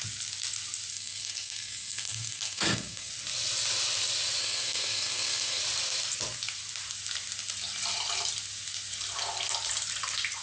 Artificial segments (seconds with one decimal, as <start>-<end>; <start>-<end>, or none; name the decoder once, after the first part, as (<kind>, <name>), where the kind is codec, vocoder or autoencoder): 0.9-3.1 (codec, SNAC); 4.4-5.6